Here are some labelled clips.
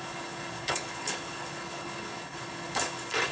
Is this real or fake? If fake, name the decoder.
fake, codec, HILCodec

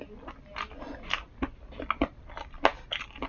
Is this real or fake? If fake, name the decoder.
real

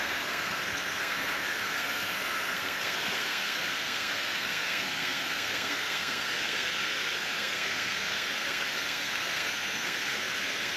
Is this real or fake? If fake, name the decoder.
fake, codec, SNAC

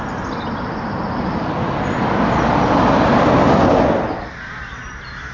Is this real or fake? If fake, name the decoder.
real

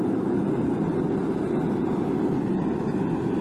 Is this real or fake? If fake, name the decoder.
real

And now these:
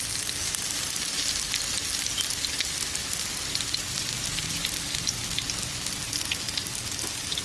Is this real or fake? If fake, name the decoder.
real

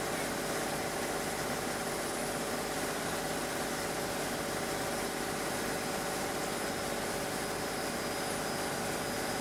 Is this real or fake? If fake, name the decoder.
real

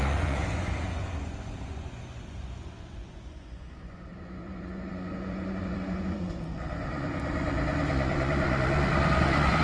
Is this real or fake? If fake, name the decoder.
fake, vocoder, Vocos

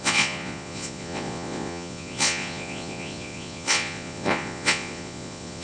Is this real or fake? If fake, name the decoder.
fake, vocoder, Vocos